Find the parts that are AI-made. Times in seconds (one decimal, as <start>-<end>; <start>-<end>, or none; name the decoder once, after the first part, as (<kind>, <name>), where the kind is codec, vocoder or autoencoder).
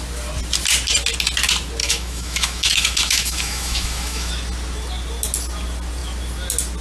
1.8-4.3 (autoencoder, DAC-VAE)